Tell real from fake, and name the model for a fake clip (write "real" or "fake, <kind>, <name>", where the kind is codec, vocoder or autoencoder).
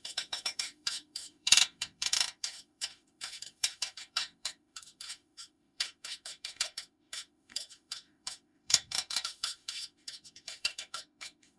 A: fake, autoencoder, DAC-VAE